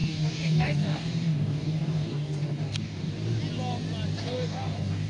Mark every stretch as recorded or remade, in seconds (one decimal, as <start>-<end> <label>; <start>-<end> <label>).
0.0-3.1 remade; 3.1-4.2 recorded; 4.2-5.1 remade